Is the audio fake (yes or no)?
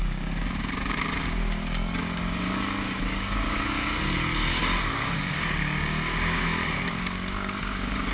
yes